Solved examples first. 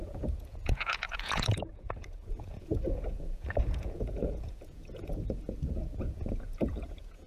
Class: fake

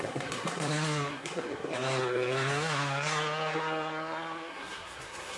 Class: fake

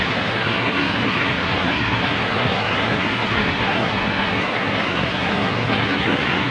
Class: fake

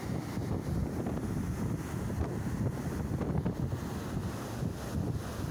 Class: real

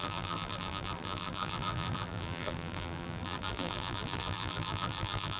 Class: fake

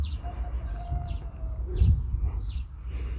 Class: fake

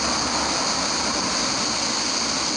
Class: real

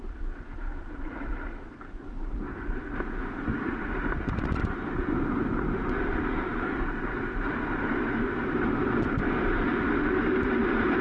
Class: real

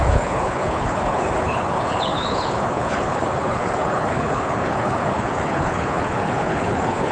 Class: fake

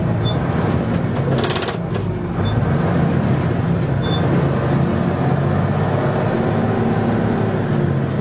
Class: real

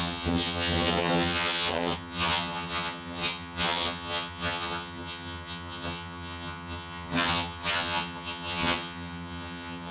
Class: fake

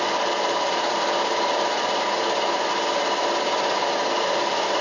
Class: real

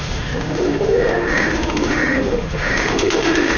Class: fake